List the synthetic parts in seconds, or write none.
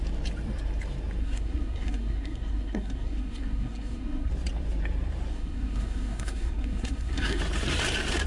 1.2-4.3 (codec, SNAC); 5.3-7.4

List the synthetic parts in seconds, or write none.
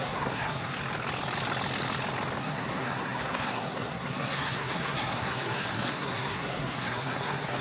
0.0-0.8 (codec, SNAC); 2.4-7.6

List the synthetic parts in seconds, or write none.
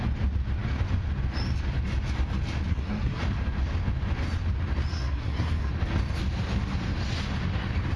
2.7-3.2 (codec, SNAC); 4.9-5.7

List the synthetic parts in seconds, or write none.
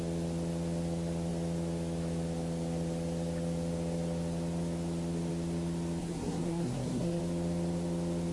6.0-7.2 (codec, SNAC)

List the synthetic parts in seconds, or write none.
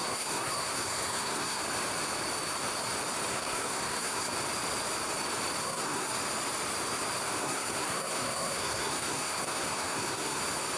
0.0-1.6 (codec, SNAC); 3.3-4.3; 5.6-6.1; 7.4-10.4